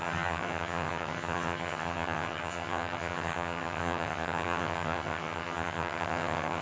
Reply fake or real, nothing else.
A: fake